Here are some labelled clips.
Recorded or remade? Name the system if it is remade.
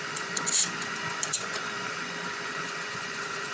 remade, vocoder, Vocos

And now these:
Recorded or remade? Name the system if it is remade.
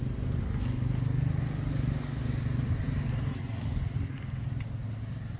recorded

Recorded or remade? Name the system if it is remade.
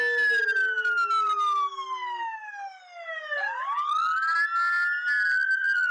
recorded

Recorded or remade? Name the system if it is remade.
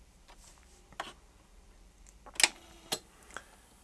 recorded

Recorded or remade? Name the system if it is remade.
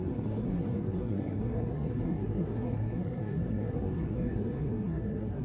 remade, codec, SNAC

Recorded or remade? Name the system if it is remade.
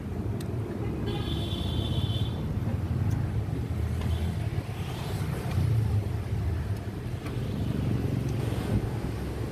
recorded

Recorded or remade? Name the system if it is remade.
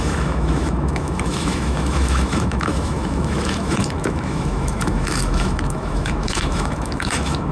remade, autoencoder, DAC-VAE